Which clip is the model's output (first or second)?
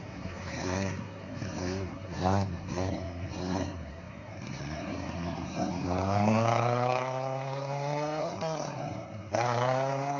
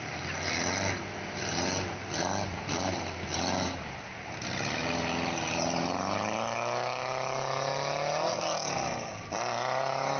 first